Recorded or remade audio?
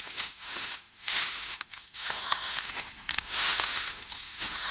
remade